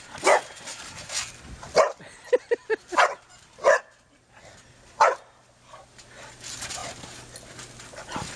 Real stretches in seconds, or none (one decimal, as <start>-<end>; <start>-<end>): 0.0-8.4